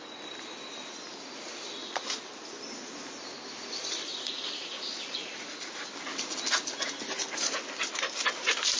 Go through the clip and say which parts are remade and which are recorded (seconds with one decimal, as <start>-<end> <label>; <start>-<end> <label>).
0.0-1.8 recorded; 1.8-2.4 remade; 2.4-4.1 recorded; 4.1-5.9 remade; 5.9-8.8 recorded